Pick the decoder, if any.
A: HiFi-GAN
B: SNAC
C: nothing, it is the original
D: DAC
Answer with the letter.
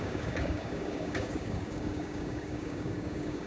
D